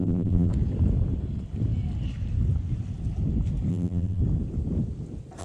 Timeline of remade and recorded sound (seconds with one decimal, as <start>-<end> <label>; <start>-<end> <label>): 0.0-0.5 remade; 0.5-3.7 recorded; 3.7-4.2 remade; 4.2-5.4 recorded